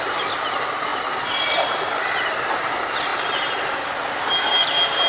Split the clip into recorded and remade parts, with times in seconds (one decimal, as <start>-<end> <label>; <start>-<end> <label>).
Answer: 0.0-0.9 recorded; 0.9-2.3 remade; 2.3-5.1 recorded

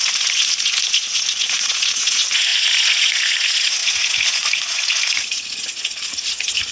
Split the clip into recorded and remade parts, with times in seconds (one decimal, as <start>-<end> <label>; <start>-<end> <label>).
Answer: 0.0-6.7 remade

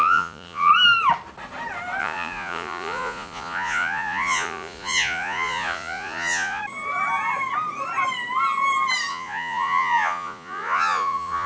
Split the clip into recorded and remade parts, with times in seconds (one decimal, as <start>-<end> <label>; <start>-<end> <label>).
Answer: 0.0-0.7 remade; 0.7-2.0 recorded; 2.0-6.6 remade; 6.6-9.1 recorded; 9.1-11.5 remade

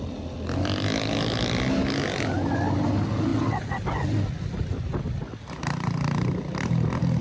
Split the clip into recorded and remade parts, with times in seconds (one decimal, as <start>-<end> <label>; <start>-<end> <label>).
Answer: 0.0-7.2 recorded

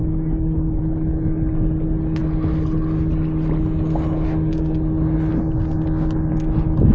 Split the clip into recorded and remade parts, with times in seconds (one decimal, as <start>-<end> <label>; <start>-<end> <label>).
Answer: 0.0-0.8 remade; 0.8-6.9 recorded

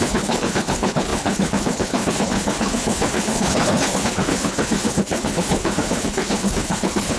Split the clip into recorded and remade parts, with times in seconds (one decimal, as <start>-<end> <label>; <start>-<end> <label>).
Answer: 0.0-7.2 remade